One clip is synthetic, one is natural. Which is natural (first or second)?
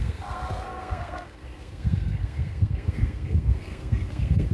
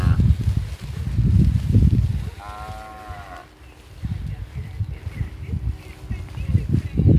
second